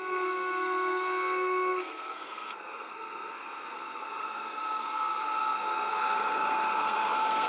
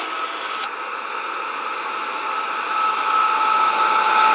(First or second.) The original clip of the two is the second